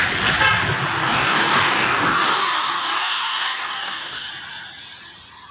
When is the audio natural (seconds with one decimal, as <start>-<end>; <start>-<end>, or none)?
0.0-1.0; 4.3-5.5